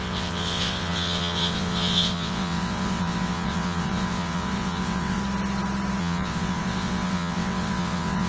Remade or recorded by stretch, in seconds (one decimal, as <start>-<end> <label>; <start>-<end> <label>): 0.0-5.2 remade; 5.2-6.0 recorded; 6.0-8.3 remade